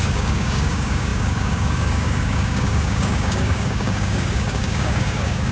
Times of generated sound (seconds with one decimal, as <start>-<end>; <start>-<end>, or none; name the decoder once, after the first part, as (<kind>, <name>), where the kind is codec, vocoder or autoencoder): 0.0-5.5 (codec, DAC)